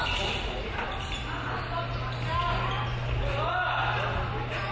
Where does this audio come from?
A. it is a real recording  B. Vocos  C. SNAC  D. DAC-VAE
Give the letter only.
A